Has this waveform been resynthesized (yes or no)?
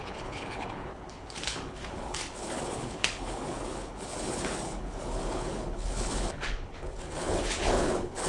yes